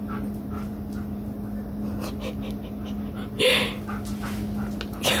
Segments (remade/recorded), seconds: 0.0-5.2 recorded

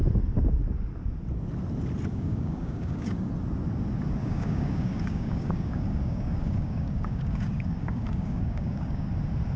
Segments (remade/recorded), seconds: 0.0-2.1 recorded; 2.1-3.3 remade; 3.3-4.2 recorded; 4.2-9.1 remade; 9.1-9.6 recorded